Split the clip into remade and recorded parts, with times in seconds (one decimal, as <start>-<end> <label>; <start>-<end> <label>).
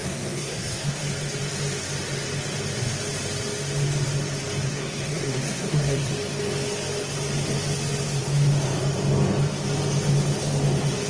0.0-1.0 remade; 1.0-4.7 recorded; 4.7-6.1 remade; 6.1-11.1 recorded